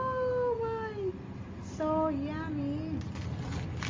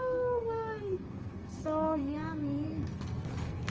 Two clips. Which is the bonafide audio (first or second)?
first